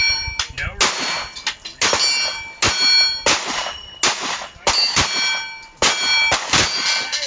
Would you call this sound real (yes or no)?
yes